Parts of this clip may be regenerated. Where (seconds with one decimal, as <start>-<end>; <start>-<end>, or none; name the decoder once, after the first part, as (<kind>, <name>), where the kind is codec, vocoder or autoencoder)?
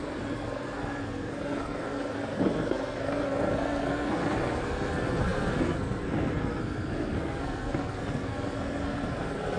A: 0.0-9.6 (codec, SNAC)